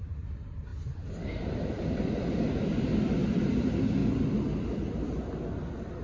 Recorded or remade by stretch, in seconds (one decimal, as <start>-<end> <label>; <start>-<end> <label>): 0.0-4.0 remade; 4.0-6.0 recorded